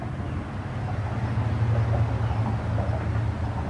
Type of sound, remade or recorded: recorded